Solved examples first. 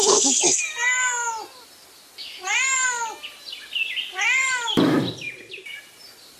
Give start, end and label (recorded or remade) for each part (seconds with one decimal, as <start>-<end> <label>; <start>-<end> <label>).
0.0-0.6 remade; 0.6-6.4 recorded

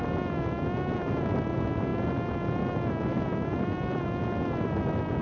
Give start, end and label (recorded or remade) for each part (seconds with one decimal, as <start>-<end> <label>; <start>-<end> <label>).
0.0-5.2 recorded

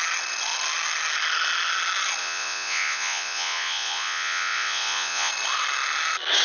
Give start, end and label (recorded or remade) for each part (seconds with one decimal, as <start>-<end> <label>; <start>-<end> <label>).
0.0-2.2 recorded; 2.2-5.3 remade; 5.3-6.4 recorded